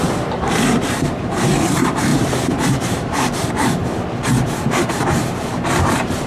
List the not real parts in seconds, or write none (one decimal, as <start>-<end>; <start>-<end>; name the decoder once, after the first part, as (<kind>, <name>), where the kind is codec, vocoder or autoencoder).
0.0-2.1 (vocoder, BigVGAN v2); 2.7-3.8; 4.6-6.3